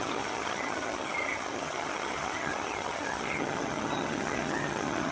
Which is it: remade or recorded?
remade